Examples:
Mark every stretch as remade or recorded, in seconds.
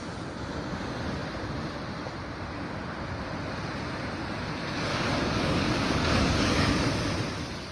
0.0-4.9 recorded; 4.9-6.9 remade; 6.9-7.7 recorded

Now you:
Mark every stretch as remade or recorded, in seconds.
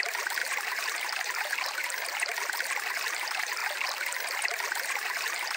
0.0-1.8 remade; 1.8-2.9 recorded; 2.9-3.6 remade; 3.6-4.8 recorded; 4.8-5.6 remade